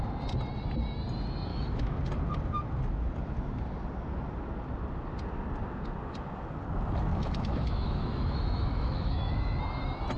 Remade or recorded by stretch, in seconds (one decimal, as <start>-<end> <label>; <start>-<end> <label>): 0.0-1.5 recorded; 1.5-2.0 remade; 2.0-7.1 recorded; 7.1-9.6 remade; 9.6-10.2 recorded